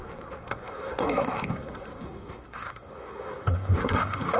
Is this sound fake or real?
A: fake